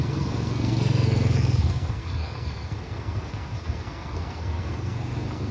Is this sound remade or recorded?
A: remade